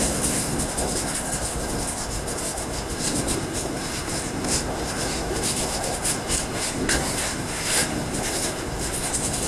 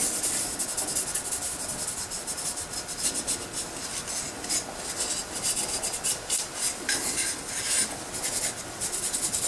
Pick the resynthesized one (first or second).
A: first